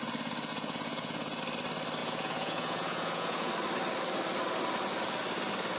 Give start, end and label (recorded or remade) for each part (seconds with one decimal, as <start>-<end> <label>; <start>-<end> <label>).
0.0-0.5 recorded; 0.5-1.4 remade; 1.4-2.0 recorded; 2.0-3.5 remade; 3.5-5.8 recorded